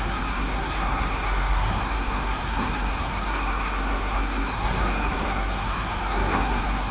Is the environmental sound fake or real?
fake